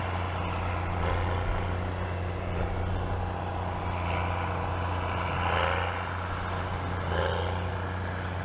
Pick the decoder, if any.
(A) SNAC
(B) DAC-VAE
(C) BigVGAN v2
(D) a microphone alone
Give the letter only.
D